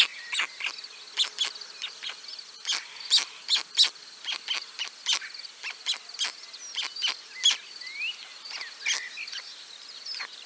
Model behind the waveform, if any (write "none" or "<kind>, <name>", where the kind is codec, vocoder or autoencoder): none